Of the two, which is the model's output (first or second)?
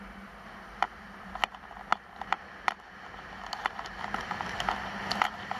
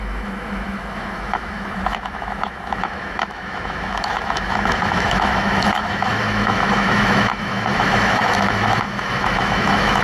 second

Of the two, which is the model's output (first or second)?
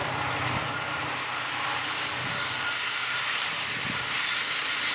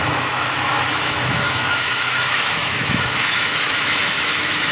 second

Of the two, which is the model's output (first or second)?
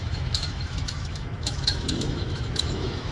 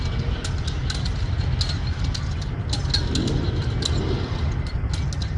first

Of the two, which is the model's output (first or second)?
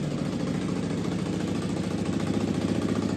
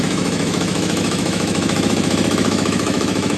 second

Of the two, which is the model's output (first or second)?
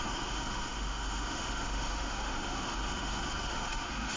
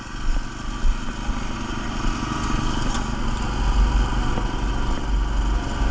first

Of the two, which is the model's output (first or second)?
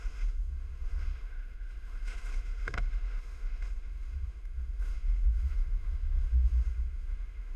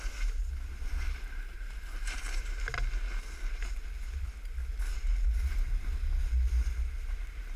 first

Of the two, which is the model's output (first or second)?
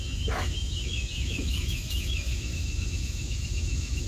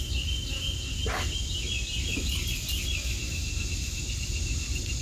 first